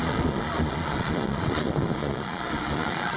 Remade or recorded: remade